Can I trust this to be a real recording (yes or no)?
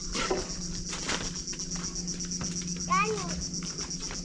yes